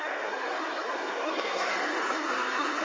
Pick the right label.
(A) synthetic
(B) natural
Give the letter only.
A